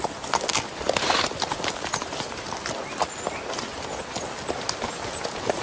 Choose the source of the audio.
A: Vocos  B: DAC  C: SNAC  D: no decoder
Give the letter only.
D